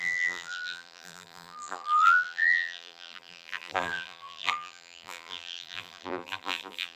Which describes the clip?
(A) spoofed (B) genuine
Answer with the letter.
A